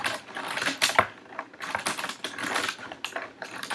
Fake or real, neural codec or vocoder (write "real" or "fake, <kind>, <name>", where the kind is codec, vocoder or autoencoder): real